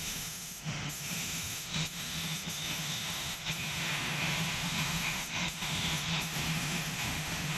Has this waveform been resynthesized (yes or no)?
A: yes